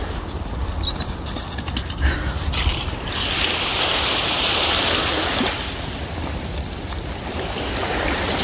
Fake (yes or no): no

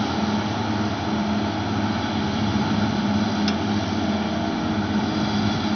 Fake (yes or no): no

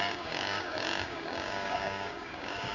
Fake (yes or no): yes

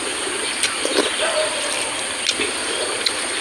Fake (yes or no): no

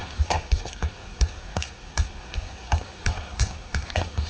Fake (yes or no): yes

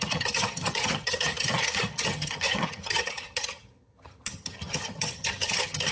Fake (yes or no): yes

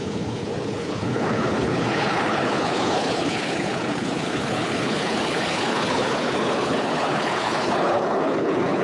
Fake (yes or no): yes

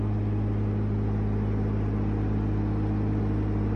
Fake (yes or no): no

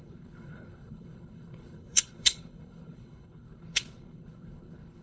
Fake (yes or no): yes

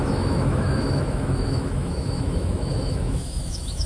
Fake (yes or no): yes